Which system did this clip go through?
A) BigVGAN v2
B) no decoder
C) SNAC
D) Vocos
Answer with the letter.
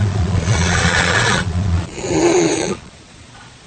D